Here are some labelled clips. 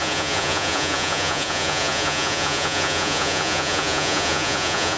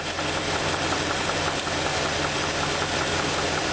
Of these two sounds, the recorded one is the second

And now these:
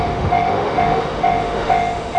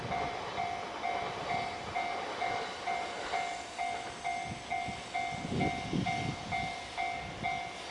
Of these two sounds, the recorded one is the second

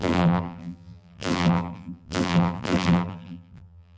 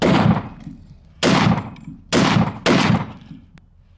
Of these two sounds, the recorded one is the second